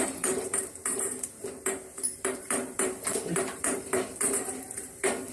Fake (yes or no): yes